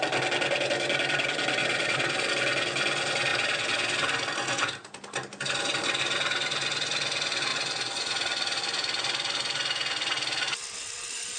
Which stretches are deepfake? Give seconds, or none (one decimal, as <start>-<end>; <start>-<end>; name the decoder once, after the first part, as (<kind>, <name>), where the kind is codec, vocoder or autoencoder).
1.6-2.3 (vocoder, Vocos); 7.5-8.6